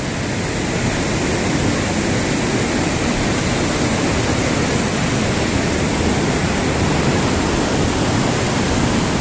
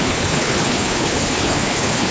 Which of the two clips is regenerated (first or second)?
second